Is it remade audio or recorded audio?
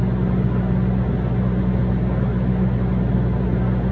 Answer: recorded